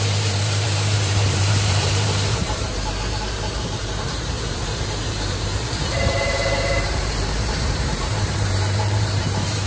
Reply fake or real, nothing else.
fake